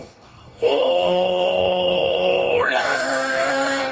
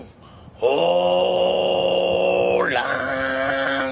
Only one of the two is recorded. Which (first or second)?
second